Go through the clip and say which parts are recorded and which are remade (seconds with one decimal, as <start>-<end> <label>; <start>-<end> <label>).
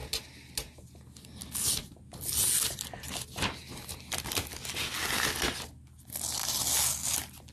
0.0-7.5 recorded